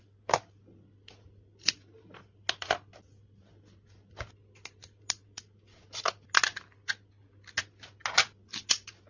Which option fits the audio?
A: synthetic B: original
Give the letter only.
B